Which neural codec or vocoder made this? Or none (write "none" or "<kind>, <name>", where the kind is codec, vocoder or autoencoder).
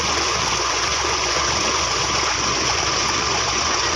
vocoder, Vocos